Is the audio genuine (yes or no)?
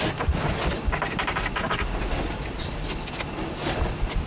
yes